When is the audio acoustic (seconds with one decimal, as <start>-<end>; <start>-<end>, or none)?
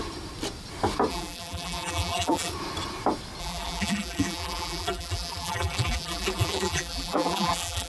0.0-1.1; 2.5-3.4